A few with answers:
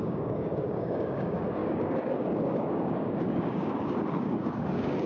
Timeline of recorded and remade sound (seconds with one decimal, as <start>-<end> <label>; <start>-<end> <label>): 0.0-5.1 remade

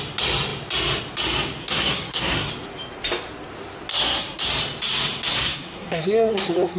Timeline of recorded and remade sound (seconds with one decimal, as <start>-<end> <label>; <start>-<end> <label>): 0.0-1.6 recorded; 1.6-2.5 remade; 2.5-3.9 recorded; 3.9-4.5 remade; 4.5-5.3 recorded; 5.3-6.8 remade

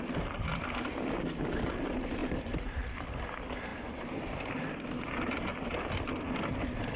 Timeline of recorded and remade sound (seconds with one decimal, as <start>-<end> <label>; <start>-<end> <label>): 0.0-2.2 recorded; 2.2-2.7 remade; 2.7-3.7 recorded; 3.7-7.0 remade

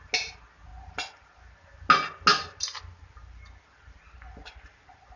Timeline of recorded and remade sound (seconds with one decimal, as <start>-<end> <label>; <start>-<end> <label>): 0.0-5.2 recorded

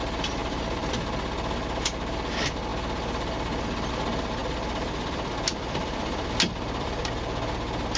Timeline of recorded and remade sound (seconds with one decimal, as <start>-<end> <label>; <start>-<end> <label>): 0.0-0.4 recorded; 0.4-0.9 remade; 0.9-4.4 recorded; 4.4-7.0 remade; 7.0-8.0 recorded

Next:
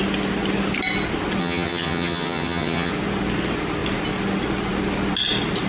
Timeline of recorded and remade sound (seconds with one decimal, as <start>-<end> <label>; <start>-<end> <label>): 0.0-1.4 recorded; 1.4-2.9 remade; 2.9-5.7 recorded

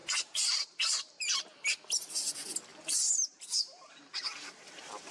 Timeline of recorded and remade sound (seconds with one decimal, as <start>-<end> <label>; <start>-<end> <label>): 0.0-1.4 remade; 1.4-2.7 recorded; 2.7-5.1 remade

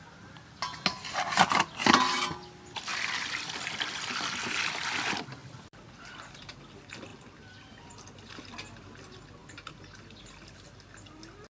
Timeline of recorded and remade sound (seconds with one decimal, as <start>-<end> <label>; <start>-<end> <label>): 0.0-2.9 recorded; 2.9-4.1 remade; 4.1-5.4 recorded; 5.4-6.5 remade; 6.5-11.5 recorded